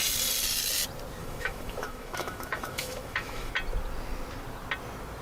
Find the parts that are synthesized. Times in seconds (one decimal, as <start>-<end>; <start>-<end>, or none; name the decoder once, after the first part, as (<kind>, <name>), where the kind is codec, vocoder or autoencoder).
1.2-3.5 (autoencoder, DAC-VAE)